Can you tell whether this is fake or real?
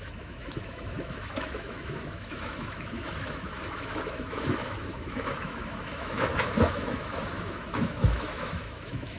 fake